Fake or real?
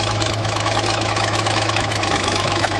fake